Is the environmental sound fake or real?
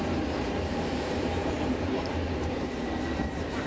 fake